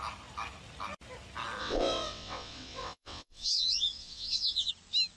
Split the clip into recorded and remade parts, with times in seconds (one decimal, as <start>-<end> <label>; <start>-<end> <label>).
0.0-1.6 recorded; 1.6-4.7 remade; 4.7-5.2 recorded